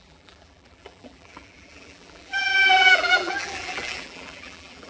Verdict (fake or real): fake